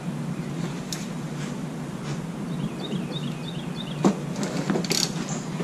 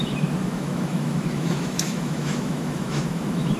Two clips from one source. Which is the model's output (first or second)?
second